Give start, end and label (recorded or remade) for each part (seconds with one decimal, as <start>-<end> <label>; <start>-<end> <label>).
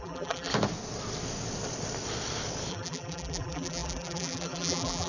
0.0-0.5 remade; 0.5-2.7 recorded; 2.7-5.1 remade